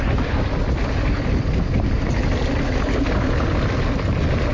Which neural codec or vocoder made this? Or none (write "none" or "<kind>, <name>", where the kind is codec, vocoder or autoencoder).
none